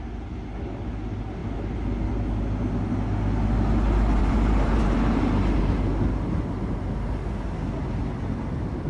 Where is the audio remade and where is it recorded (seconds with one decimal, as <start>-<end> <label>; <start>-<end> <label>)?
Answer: 0.0-4.2 recorded; 4.2-5.6 remade; 5.6-8.9 recorded